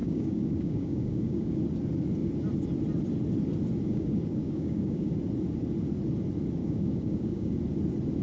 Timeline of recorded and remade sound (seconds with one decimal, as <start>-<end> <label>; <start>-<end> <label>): 0.0-1.6 remade; 1.6-3.9 recorded; 3.9-5.1 remade; 5.1-6.6 recorded; 6.6-7.6 remade; 7.6-8.2 recorded

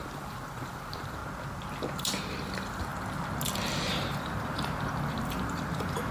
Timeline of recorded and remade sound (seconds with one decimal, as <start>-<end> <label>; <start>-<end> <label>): 0.0-1.2 remade; 1.2-2.4 recorded; 2.4-2.9 remade; 2.9-3.9 recorded; 3.9-6.1 remade